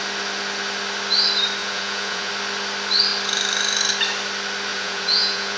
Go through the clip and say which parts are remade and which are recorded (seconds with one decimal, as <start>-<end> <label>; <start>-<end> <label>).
0.0-1.6 recorded; 1.6-2.3 remade; 2.3-4.7 recorded; 4.7-5.6 remade